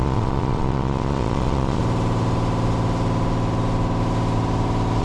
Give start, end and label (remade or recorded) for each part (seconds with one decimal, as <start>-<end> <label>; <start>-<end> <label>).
0.0-1.8 remade; 1.8-5.0 recorded